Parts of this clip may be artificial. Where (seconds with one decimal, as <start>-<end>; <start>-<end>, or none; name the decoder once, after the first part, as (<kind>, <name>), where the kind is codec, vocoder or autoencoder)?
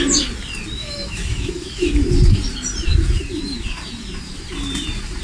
0.8-1.9 (autoencoder, DAC-VAE)